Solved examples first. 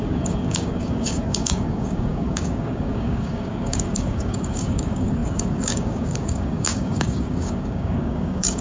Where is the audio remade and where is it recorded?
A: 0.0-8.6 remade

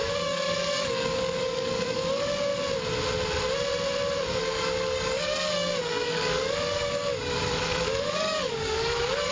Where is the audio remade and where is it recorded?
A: 0.0-2.5 remade; 2.5-4.2 recorded; 4.2-9.3 remade

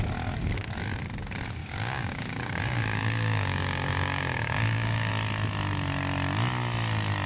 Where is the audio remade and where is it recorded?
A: 0.0-1.6 recorded; 1.6-5.1 remade; 5.1-7.3 recorded

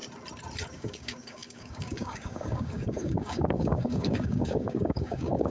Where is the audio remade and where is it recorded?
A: 0.0-0.7 recorded; 0.7-5.5 remade